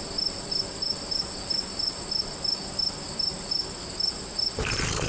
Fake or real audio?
real